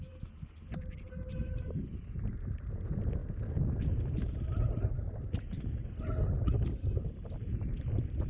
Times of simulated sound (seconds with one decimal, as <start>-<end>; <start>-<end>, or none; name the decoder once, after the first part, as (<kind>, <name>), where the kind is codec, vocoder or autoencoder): none